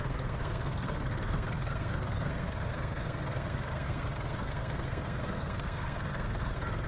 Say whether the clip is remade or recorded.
remade